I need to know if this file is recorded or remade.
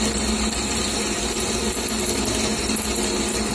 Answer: recorded